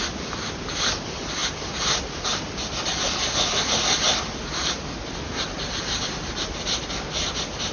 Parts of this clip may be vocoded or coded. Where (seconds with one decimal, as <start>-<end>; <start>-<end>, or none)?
none